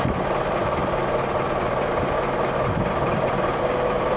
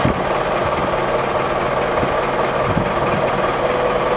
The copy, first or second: first